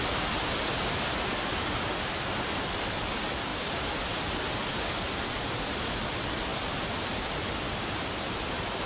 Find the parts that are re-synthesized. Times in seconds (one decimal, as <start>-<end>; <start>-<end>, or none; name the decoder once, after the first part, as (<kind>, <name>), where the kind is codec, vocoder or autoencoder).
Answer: none